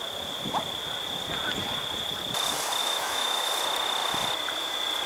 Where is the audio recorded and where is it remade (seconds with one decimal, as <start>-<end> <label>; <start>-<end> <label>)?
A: 0.0-2.8 recorded; 2.8-3.5 remade; 3.5-5.1 recorded